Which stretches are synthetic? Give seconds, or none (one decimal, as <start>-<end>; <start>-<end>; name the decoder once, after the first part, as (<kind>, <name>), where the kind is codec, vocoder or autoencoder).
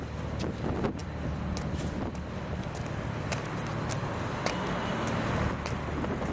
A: none